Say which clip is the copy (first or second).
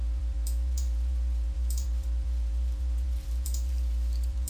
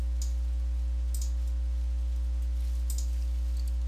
first